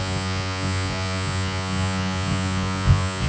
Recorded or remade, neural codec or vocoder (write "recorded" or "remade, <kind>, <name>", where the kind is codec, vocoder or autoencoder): remade, vocoder, Vocos